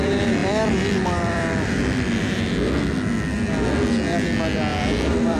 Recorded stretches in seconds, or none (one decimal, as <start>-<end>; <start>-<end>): 0.0-0.4; 1.4-4.7